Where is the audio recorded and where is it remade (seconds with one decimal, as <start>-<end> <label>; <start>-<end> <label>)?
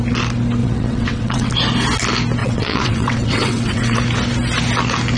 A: 0.0-0.6 recorded; 0.6-1.5 remade; 1.5-2.4 recorded; 2.4-4.0 remade; 4.0-5.2 recorded